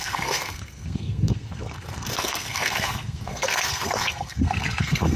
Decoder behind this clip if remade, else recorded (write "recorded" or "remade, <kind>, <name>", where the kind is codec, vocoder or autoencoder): remade, codec, SNAC